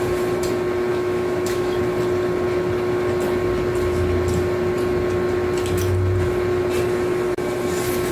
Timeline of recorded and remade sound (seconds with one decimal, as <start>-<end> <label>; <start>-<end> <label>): 0.0-0.9 recorded; 0.9-1.8 remade; 1.8-8.1 recorded

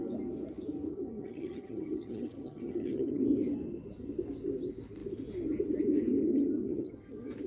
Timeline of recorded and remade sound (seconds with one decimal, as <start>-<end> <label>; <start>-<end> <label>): 0.0-0.9 recorded; 0.9-3.2 remade; 3.2-6.2 recorded; 6.2-6.9 remade; 6.9-7.5 recorded

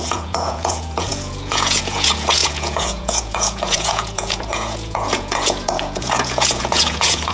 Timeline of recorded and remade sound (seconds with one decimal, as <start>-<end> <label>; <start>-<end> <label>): 0.0-7.3 remade

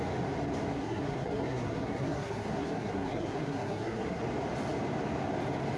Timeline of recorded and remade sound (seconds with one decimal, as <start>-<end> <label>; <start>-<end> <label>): 0.0-0.7 recorded; 0.7-4.2 remade; 4.2-5.8 recorded

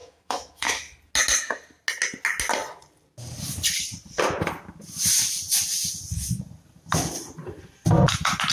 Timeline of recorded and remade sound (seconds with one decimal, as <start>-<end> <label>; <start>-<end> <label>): 0.0-0.8 remade; 0.8-8.5 recorded

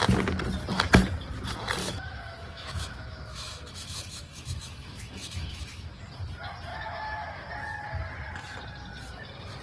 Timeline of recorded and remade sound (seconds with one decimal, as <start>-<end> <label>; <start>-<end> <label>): 0.0-1.8 recorded; 1.8-6.0 remade; 6.0-6.7 recorded; 6.7-7.5 remade; 7.5-9.6 recorded

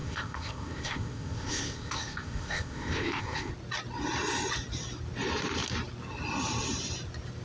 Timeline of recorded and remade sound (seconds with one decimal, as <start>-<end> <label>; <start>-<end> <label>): 0.0-3.5 remade; 3.5-7.4 recorded

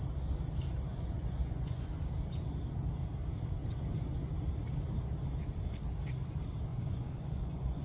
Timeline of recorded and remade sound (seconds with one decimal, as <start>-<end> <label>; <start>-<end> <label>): 0.0-0.9 recorded; 0.9-1.9 remade; 1.9-6.7 recorded; 6.7-7.8 remade